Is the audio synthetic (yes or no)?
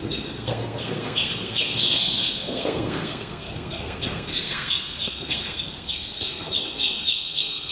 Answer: yes